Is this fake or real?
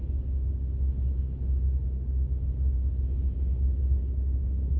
real